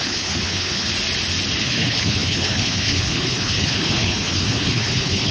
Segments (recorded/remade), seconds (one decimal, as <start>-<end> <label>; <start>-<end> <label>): 0.0-0.9 remade; 0.9-1.6 recorded; 1.6-5.3 remade